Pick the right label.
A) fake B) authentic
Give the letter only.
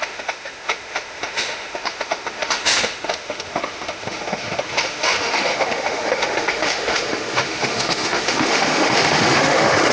A